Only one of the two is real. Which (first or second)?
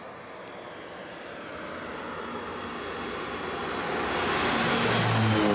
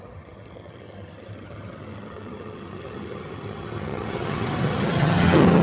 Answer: first